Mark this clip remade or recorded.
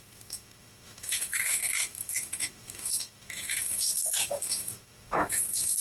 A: remade